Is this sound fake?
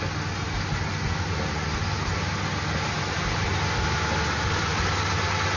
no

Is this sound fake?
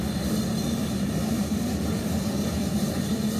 yes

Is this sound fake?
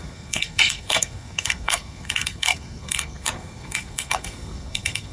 yes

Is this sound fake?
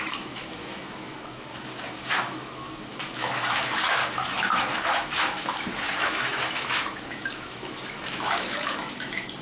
yes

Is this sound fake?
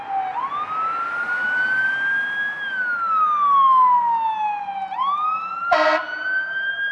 no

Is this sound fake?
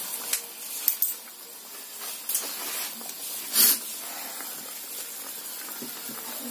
no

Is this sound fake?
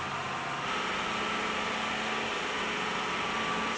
no